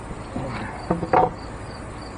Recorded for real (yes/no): yes